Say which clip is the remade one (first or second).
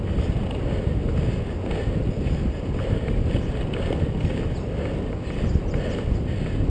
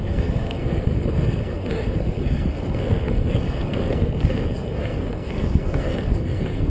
second